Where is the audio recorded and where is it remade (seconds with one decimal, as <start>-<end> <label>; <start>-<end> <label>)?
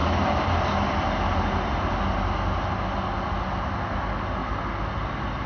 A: 0.0-5.5 recorded